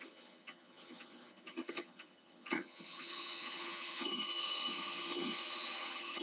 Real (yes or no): no